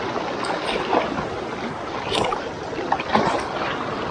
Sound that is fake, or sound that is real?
real